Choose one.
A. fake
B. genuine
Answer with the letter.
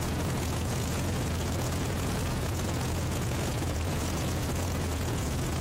A